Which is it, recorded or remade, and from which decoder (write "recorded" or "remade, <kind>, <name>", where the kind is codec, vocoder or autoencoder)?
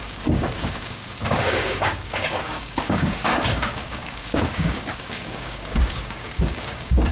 remade, codec, DAC